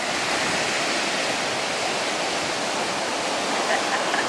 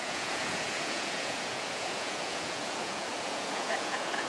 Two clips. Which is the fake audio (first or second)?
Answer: second